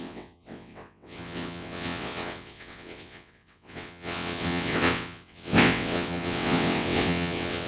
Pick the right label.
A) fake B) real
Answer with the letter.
A